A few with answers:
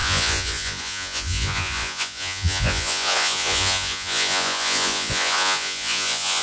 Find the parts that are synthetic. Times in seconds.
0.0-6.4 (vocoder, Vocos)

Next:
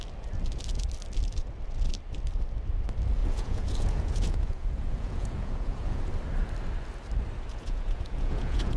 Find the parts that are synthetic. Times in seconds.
3.2-6.0 (vocoder, Vocos); 7.5-8.8

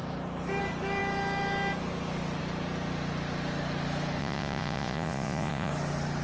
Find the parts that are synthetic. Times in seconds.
4.2-5.7 (vocoder, Vocos)